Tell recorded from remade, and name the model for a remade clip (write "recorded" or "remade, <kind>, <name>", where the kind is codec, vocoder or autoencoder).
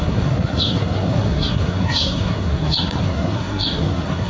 remade, codec, SNAC